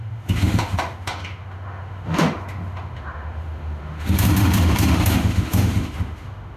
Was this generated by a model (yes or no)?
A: yes